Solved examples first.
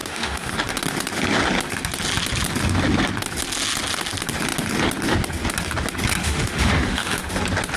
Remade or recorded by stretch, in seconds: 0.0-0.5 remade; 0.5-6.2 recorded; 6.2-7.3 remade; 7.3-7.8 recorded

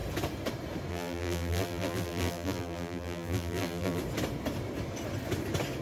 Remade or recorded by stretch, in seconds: 0.0-0.9 recorded; 0.9-4.0 remade; 4.0-5.8 recorded

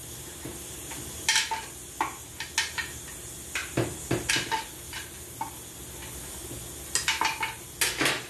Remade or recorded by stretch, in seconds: 0.0-8.3 recorded

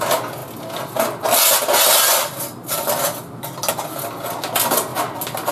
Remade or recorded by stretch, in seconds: 0.0-5.5 recorded

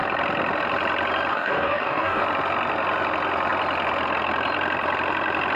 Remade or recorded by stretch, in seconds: 0.0-1.3 recorded; 1.3-2.2 remade; 2.2-5.6 recorded

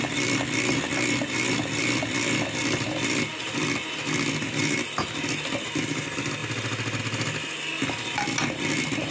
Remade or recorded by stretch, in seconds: 0.0-9.1 recorded